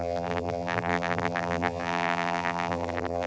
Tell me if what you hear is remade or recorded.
remade